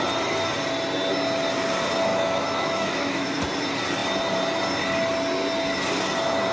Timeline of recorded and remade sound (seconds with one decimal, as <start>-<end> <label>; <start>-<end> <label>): 0.0-2.1 recorded; 2.1-3.4 remade; 3.4-6.5 recorded